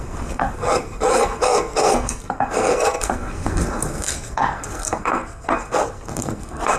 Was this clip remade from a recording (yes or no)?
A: yes